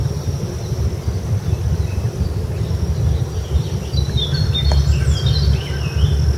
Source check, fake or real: real